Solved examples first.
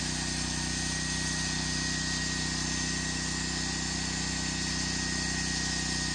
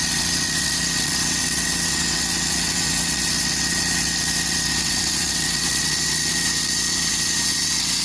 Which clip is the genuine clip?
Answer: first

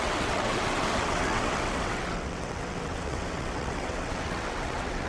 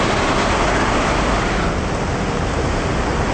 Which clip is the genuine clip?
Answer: second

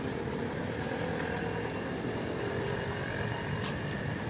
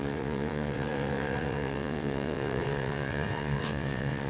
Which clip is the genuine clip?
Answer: first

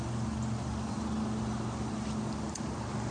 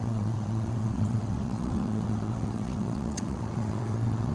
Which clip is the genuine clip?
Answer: first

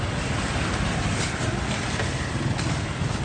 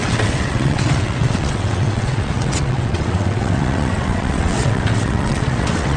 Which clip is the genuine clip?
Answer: first